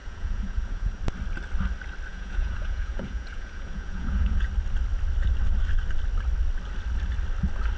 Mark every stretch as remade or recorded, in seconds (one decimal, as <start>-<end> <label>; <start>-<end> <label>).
0.0-1.0 remade; 1.0-2.1 recorded; 2.1-4.5 remade; 4.5-7.8 recorded